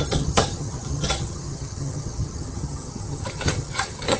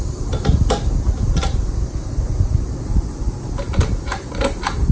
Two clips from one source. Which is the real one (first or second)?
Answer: second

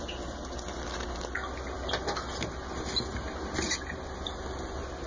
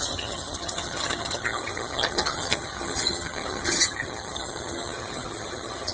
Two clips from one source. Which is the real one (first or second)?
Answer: first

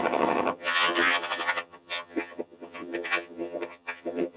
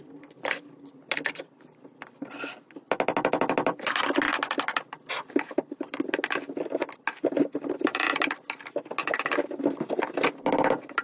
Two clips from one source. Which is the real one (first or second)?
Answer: second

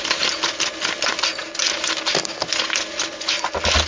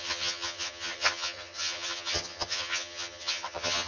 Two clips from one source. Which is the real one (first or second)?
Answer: first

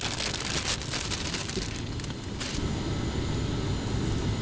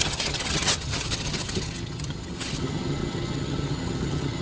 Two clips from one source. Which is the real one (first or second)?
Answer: first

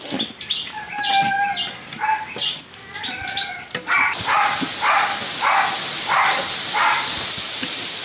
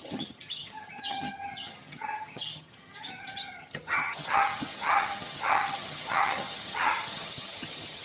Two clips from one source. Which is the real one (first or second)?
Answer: first